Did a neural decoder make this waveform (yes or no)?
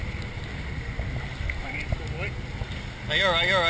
no